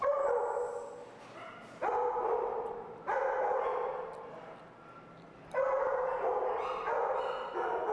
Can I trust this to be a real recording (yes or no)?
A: yes